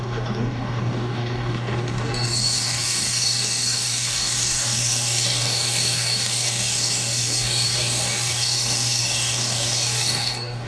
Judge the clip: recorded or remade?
remade